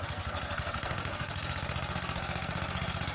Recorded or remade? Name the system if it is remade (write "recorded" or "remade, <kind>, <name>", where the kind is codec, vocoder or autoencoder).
remade, codec, SNAC